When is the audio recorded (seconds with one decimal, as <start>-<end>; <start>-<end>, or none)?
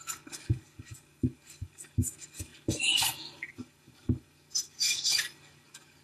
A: none